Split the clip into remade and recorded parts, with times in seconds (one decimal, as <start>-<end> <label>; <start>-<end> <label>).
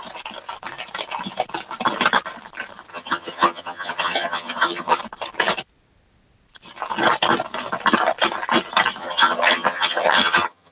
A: 0.0-2.9 recorded; 2.9-5.0 remade; 5.0-9.0 recorded; 9.0-10.7 remade